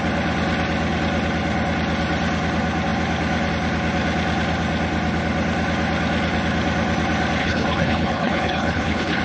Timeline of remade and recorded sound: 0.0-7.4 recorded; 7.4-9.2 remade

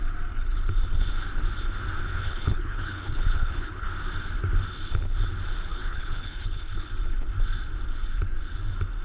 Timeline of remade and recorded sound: 0.0-2.1 recorded; 2.1-3.9 remade; 3.9-5.7 recorded; 5.7-6.9 remade; 6.9-9.0 recorded

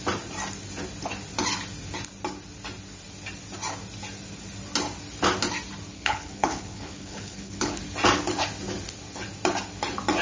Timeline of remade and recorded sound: 0.0-5.9 recorded; 5.9-7.8 remade; 7.8-10.2 recorded

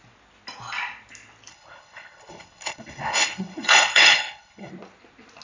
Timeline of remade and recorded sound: 0.0-1.5 recorded; 1.5-4.7 remade; 4.7-5.4 recorded

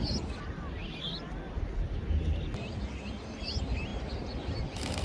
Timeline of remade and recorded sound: 0.0-5.0 recorded

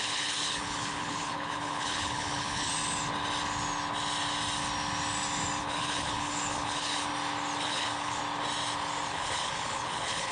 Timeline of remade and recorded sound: 0.0-2.7 remade; 2.7-5.6 recorded; 5.6-7.1 remade; 7.1-7.6 recorded; 7.6-8.2 remade; 8.2-9.1 recorded; 9.1-10.3 remade

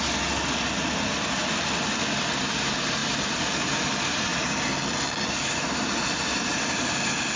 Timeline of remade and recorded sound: 0.0-7.4 recorded

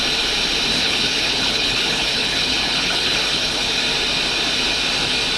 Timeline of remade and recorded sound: 0.0-0.7 recorded; 0.7-3.8 remade; 3.8-5.4 recorded